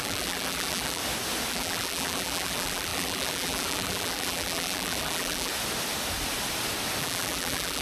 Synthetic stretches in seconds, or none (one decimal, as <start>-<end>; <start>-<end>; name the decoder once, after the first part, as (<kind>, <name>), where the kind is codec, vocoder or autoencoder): 0.0-1.0 (vocoder, BigVGAN v2); 1.5-5.5; 7.0-7.8